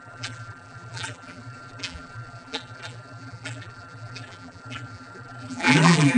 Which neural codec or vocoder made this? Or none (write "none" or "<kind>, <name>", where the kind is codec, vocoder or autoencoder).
vocoder, BigVGAN v2